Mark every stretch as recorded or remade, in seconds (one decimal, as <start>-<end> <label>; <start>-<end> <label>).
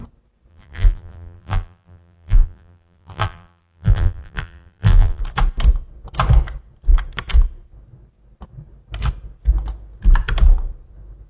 0.0-0.5 recorded; 0.5-5.2 remade; 5.2-11.3 recorded